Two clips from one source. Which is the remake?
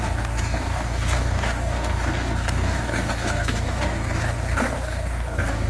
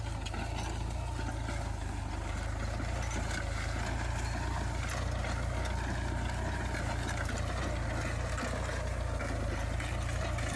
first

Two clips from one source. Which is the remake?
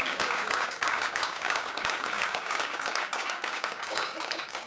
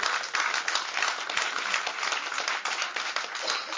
first